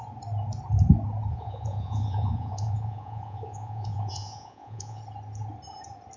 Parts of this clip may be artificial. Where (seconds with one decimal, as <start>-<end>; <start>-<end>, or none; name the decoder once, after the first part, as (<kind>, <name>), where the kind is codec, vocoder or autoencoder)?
1.3-5.0 (vocoder, Vocos)